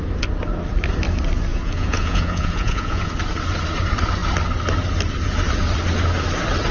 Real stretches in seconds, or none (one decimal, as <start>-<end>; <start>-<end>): 0.0-1.5; 3.1-6.7